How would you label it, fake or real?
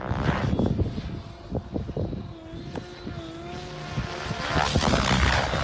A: real